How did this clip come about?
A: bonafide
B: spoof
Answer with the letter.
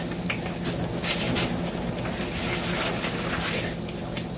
A